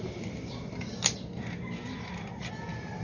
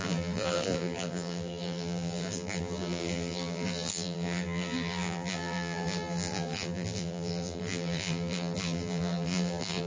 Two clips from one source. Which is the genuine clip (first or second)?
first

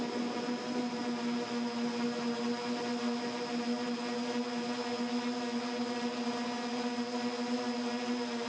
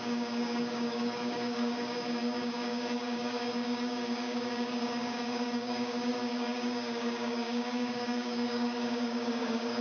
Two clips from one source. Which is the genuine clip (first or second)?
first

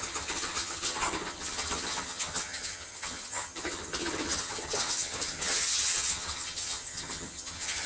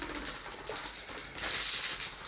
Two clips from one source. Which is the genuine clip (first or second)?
second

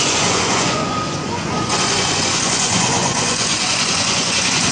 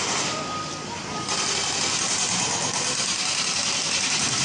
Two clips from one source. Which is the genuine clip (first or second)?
second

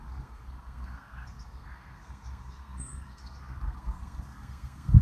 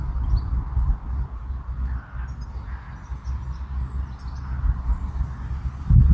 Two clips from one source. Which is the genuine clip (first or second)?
second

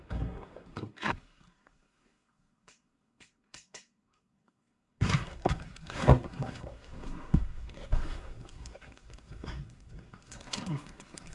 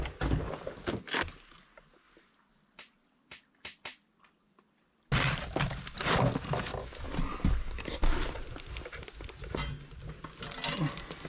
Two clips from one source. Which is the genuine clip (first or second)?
second